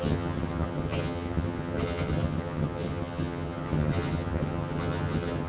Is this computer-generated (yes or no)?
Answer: yes